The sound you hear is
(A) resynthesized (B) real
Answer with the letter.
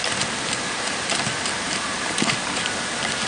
B